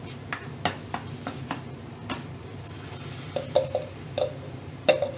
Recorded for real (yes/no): yes